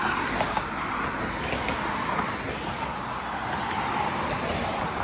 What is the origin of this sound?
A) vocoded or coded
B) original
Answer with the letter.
B